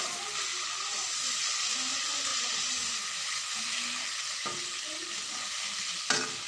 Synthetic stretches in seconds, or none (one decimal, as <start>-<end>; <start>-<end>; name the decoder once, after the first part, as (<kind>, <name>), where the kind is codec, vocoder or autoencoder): none